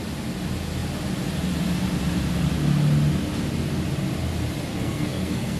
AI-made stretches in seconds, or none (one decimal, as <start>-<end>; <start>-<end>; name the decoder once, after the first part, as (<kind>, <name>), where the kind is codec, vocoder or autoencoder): 4.7-5.6 (codec, SNAC)